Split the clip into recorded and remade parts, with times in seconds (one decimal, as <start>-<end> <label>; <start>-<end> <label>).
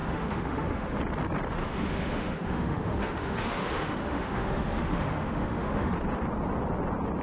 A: 0.0-1.0 remade; 1.0-1.6 recorded; 1.6-5.9 remade; 5.9-7.2 recorded